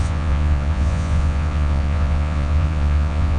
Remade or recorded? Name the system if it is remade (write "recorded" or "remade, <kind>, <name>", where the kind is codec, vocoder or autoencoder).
remade, vocoder, Vocos